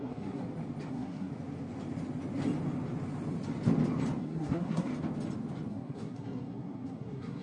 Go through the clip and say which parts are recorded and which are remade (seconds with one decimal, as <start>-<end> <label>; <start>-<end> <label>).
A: 0.0-0.4 remade; 0.4-0.9 recorded; 0.9-1.3 remade; 1.3-4.2 recorded; 4.2-4.9 remade; 4.9-5.7 recorded; 5.7-7.4 remade